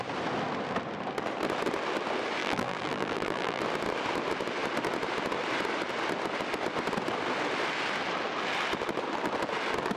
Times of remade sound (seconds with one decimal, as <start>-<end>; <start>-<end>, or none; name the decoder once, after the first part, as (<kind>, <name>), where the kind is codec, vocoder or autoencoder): 2.4-3.6 (vocoder, BigVGAN v2)